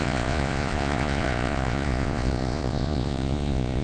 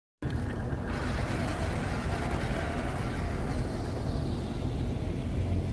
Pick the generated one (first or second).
first